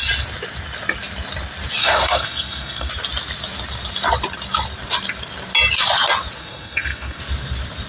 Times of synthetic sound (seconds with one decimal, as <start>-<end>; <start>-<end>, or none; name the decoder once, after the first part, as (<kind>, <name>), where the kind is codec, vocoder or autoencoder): 1.8-2.9 (codec, SNAC); 6.4-7.2